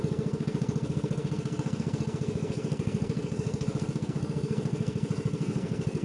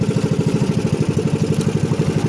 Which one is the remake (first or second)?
first